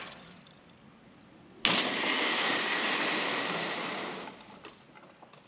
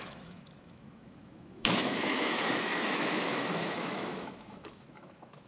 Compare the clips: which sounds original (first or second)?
first